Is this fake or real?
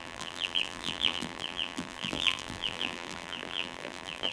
fake